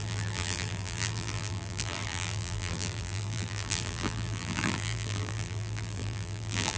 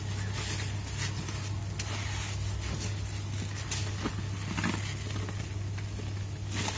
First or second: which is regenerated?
first